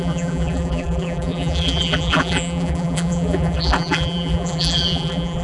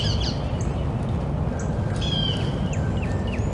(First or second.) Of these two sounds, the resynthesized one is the first